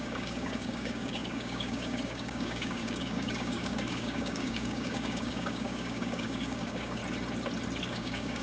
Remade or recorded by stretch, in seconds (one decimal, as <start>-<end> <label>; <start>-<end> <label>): 0.0-7.0 remade; 7.0-7.9 recorded; 7.9-8.4 remade